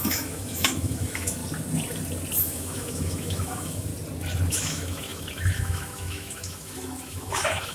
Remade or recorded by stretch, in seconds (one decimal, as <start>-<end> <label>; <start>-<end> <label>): 0.0-1.4 remade; 1.4-2.4 recorded; 2.4-3.9 remade; 3.9-4.5 recorded; 4.5-7.7 remade